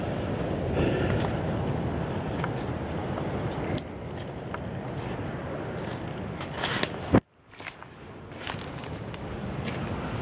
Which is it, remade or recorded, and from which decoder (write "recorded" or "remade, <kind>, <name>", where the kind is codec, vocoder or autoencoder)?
recorded